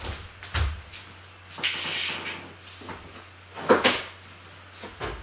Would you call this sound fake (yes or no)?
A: no